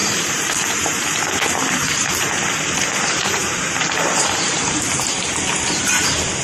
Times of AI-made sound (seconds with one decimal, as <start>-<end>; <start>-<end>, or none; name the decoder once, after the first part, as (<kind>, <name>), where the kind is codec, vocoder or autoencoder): 0.0-6.4 (vocoder, BigVGAN v2)